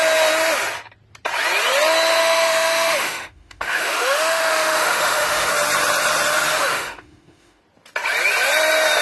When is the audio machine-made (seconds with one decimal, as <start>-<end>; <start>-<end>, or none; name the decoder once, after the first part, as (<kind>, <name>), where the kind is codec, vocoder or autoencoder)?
2.2-5.5 (autoencoder, DAC-VAE); 6.5-7.6